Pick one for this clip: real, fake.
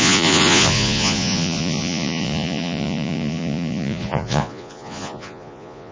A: fake